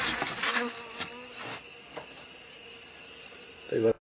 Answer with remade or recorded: recorded